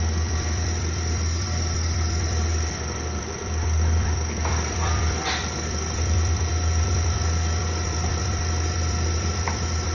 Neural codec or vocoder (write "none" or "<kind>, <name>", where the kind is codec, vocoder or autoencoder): vocoder, BigVGAN v2